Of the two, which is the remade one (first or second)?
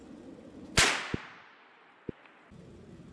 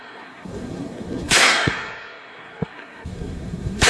second